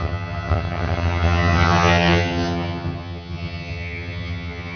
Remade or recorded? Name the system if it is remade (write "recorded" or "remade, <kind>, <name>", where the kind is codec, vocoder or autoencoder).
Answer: remade, vocoder, HiFi-GAN